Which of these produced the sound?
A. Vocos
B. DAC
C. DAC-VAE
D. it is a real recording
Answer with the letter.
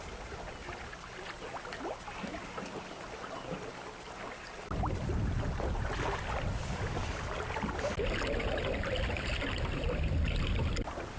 D